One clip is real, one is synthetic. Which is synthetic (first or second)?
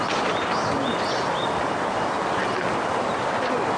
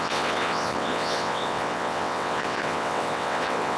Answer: second